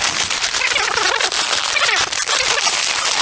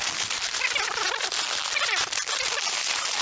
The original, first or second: second